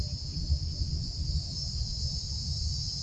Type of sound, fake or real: real